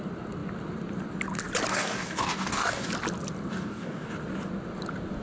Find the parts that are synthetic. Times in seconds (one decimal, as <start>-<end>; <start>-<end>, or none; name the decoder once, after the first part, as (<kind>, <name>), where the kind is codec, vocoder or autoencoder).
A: 1.7-2.9 (codec, DAC); 3.5-4.1